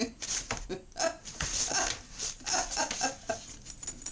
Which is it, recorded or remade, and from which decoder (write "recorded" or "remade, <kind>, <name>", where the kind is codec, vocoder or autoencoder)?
recorded